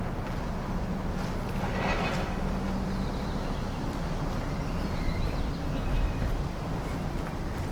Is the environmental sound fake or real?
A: real